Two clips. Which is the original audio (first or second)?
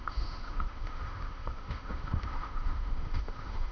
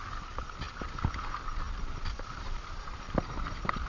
second